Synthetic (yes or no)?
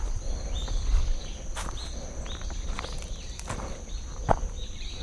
no